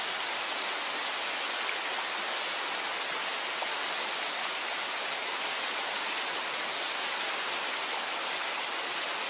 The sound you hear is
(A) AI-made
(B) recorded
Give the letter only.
B